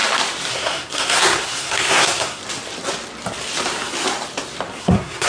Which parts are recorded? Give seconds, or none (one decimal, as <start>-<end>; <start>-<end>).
0.0-0.5; 2.4-4.8